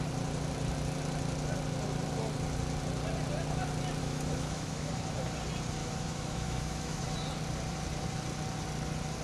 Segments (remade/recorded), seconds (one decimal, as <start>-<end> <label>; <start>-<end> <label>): 0.0-4.0 recorded; 4.0-4.9 remade; 4.9-5.8 recorded; 5.8-7.0 remade; 7.0-9.2 recorded